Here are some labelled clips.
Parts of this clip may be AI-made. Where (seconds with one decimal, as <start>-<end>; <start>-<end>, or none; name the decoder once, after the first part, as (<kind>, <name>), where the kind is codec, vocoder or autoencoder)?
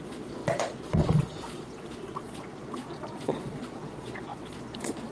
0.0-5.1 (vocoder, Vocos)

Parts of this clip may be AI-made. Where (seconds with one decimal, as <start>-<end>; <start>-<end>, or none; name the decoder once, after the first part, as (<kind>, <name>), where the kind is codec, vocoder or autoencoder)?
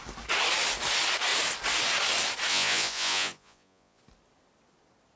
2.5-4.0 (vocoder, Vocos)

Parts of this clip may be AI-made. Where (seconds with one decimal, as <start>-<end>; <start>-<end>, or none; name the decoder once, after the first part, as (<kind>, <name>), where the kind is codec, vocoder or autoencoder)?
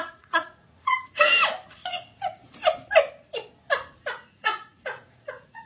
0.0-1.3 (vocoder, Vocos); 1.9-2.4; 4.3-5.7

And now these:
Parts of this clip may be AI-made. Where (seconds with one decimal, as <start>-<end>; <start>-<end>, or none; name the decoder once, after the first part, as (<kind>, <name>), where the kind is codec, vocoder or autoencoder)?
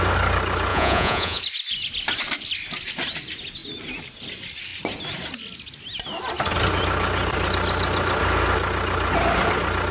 0.7-1.4 (vocoder, Vocos)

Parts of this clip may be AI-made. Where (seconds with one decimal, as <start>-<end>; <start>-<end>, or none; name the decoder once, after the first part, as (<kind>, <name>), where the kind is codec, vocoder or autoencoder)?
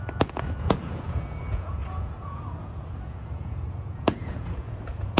0.0-5.2 (vocoder, Vocos)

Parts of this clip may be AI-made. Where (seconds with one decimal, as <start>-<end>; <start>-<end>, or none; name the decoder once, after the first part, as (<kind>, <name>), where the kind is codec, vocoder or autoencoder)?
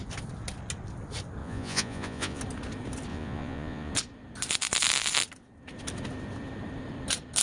1.4-2.4 (vocoder, Vocos); 3.1-3.9